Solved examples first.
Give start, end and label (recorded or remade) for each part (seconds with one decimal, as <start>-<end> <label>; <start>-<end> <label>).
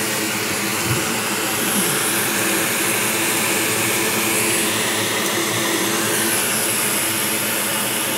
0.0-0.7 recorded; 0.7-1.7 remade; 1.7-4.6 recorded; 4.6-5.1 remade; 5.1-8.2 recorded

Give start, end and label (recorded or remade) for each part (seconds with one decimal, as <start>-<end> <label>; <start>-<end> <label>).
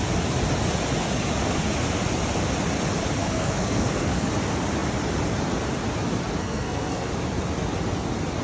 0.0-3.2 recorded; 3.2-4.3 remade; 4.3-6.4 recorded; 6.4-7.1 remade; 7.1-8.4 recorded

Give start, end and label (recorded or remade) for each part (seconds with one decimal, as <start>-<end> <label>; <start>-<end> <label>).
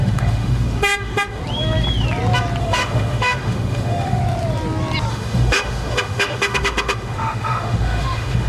0.0-1.4 remade; 1.4-2.6 recorded; 2.6-4.2 remade; 4.2-5.1 recorded; 5.1-8.5 remade